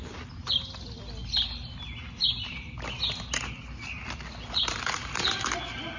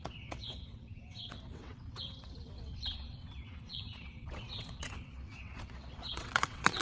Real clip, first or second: first